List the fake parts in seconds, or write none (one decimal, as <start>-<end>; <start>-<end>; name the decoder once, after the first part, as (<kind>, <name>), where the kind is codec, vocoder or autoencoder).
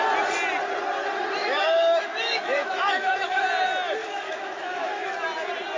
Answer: 1.4-3.4 (autoencoder, DAC-VAE); 4.0-5.1